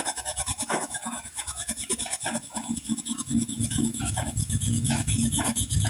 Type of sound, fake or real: fake